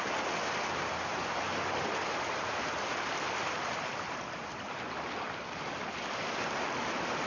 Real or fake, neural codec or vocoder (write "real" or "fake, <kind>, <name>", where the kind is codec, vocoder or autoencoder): real